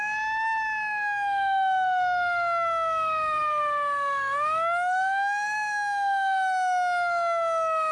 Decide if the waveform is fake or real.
fake